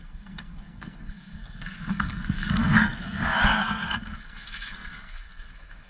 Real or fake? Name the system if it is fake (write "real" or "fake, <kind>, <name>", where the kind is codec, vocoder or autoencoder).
fake, codec, SNAC